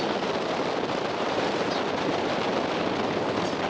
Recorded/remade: recorded